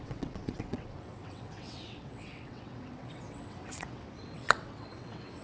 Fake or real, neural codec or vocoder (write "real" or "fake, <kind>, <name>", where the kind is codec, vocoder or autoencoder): fake, vocoder, WaveNeXt